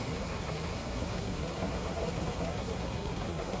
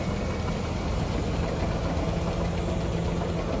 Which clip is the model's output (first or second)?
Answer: first